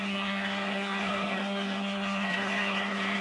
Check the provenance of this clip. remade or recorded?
remade